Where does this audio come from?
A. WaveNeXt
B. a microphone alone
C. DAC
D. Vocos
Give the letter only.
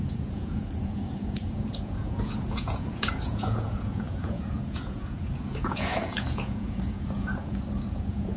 D